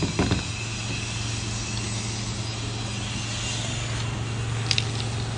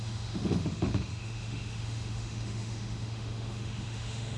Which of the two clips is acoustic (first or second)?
first